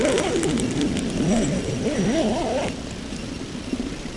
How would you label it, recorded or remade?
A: recorded